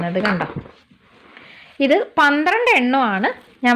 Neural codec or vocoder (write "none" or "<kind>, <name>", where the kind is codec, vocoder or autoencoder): none